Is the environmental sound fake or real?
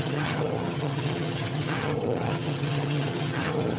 fake